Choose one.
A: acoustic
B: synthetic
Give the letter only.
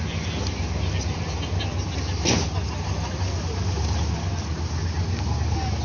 A